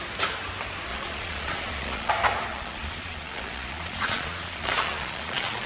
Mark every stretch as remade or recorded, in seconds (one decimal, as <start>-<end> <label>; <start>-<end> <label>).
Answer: 0.0-0.9 recorded; 0.9-2.1 remade; 2.1-2.5 recorded; 2.5-5.7 remade